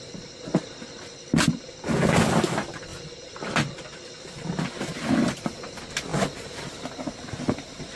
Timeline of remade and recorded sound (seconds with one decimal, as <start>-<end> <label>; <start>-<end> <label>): 0.0-8.0 recorded